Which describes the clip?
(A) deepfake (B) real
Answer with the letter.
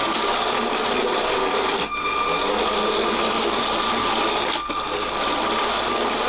B